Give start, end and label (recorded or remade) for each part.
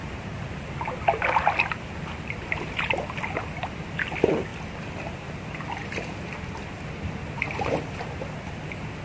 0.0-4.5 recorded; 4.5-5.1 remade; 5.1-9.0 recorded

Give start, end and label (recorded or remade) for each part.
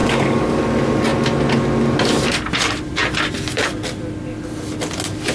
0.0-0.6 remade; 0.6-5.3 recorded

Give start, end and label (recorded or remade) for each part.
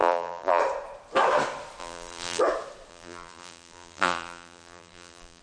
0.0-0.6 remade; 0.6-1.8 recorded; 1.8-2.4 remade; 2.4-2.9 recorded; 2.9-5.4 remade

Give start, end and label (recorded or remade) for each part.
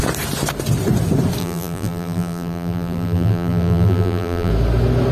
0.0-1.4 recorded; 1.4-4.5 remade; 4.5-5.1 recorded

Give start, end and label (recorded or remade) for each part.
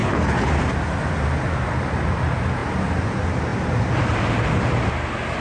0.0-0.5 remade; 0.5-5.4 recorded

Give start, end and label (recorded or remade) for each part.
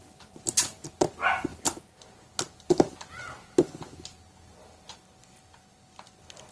0.0-6.5 recorded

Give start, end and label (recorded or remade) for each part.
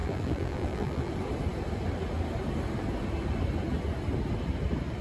0.0-1.1 remade; 1.1-5.0 recorded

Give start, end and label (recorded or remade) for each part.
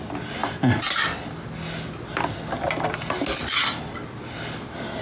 0.0-5.0 recorded